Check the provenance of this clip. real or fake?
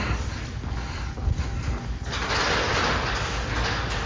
real